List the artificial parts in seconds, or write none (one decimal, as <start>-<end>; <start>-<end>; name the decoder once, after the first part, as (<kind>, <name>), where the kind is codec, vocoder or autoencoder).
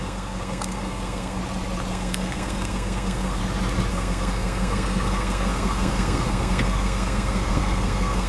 0.0-1.4 (codec, SNAC); 1.9-3.4; 3.9-8.3